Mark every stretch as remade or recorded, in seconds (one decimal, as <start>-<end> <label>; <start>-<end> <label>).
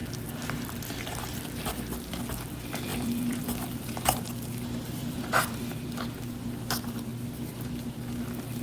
0.0-2.9 recorded; 2.9-6.0 remade; 6.0-8.6 recorded